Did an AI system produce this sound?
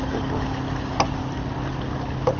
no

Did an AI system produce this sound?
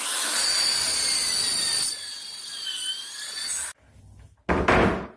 no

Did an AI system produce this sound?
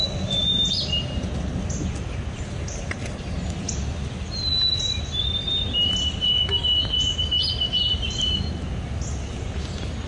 no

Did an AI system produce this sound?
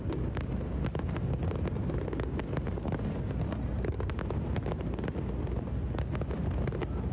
no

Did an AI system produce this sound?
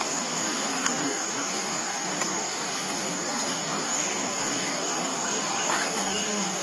yes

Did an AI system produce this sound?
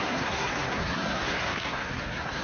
yes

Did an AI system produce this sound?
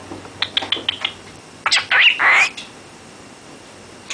no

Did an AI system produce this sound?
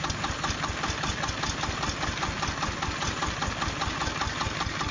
no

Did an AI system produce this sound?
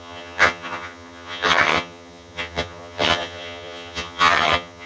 yes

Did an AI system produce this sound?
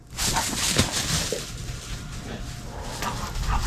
no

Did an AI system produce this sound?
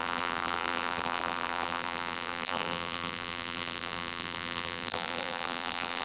yes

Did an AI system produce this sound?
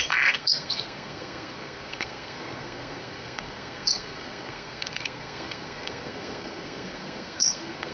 yes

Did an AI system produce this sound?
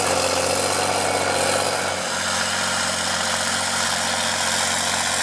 no